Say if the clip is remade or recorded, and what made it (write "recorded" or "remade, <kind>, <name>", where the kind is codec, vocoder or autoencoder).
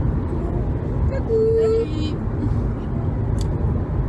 recorded